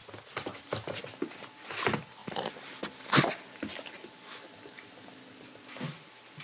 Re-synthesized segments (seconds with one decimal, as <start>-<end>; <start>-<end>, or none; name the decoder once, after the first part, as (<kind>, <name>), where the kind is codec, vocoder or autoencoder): none

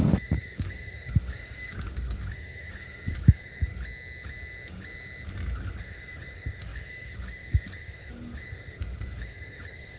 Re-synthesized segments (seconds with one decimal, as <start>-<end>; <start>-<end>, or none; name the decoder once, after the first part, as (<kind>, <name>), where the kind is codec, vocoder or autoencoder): 0.0-3.7 (codec, DAC); 5.8-10.0

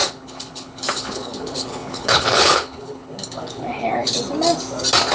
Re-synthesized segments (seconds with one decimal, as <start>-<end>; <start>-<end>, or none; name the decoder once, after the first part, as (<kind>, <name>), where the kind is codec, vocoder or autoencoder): 0.0-4.2 (codec, HILCodec)

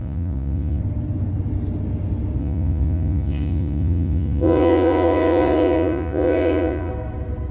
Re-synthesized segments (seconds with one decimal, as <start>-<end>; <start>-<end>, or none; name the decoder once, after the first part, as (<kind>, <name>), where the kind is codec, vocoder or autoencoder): 0.0-0.8 (vocoder, Vocos); 2.4-6.9

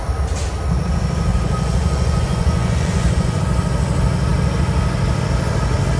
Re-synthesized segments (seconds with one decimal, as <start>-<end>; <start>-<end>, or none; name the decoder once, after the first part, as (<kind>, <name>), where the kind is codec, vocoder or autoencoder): 1.3-3.4 (vocoder, Vocos)

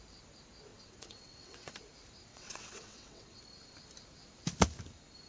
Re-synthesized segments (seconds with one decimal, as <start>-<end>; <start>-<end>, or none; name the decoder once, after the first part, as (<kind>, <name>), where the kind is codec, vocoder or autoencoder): 0.7-1.8 (vocoder, WaveNeXt); 2.3-3.4